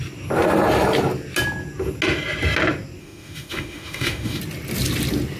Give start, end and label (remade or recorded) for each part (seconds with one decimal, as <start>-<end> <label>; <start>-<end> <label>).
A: 0.0-3.0 recorded; 3.0-4.4 remade; 4.4-5.4 recorded